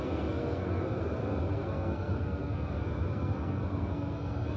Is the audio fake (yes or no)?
yes